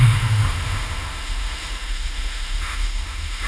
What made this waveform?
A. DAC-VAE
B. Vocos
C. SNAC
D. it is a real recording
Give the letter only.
A